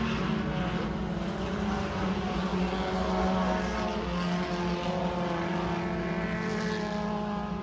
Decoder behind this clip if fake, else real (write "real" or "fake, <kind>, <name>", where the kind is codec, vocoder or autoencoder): real